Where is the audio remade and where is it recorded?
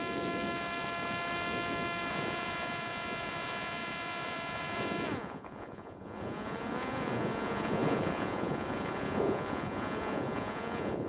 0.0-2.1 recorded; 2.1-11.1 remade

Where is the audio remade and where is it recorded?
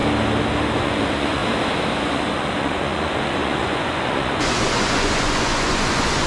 0.0-0.8 recorded; 0.8-1.4 remade; 1.4-2.0 recorded; 2.0-6.3 remade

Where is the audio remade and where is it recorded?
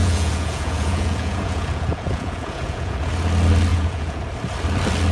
0.0-3.1 remade; 3.1-3.7 recorded; 3.7-4.2 remade; 4.2-5.1 recorded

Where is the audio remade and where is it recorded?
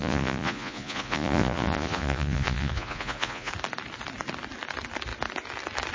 0.0-3.5 remade; 3.5-5.9 recorded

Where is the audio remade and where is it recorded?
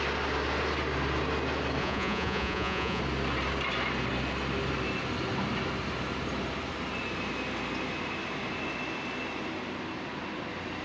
0.0-1.8 recorded; 1.8-3.0 remade; 3.0-10.8 recorded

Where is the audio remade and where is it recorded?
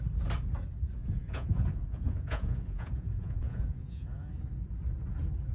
0.0-1.0 recorded; 1.0-4.3 remade; 4.3-5.5 recorded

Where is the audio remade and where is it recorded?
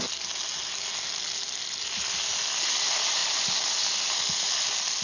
0.0-5.0 recorded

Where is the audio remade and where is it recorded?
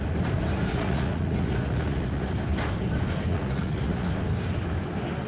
0.0-0.7 recorded; 0.7-2.3 remade; 2.3-3.3 recorded; 3.3-4.1 remade; 4.1-5.3 recorded